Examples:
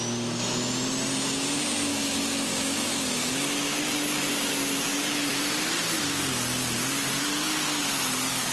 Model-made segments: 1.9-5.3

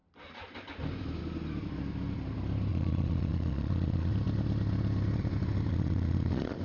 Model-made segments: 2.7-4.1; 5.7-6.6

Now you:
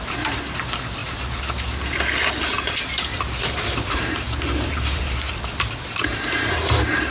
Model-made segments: 3.1-5.3

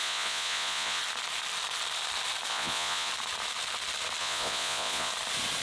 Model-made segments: 0.0-1.0; 2.5-3.1; 4.2-5.1

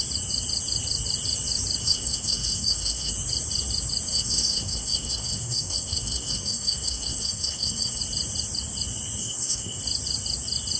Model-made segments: 1.8-3.1; 4.1-8.0; 9.2-9.8